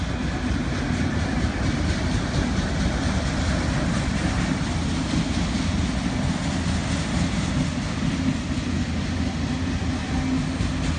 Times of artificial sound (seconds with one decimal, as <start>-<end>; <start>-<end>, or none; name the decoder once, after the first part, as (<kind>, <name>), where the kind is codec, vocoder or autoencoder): none